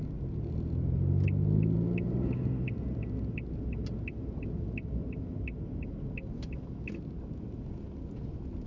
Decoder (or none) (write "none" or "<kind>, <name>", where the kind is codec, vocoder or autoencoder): none